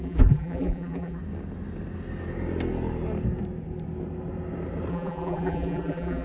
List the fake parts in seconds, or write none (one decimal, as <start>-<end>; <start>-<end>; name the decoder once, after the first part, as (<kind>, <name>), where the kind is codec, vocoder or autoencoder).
0.0-1.2 (vocoder, BigVGAN v2); 4.9-6.2